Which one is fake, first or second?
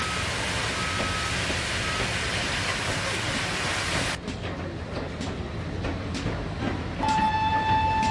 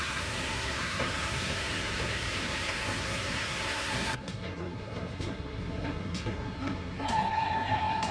second